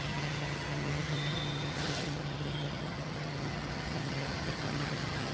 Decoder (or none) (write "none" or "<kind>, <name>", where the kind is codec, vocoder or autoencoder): vocoder, HiFi-GAN